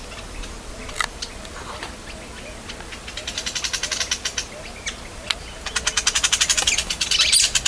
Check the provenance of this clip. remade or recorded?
recorded